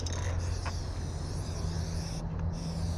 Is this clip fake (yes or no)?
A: no